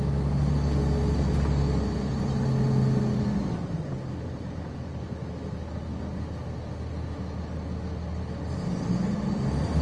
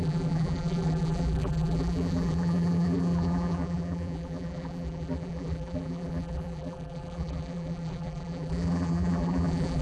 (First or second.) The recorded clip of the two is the first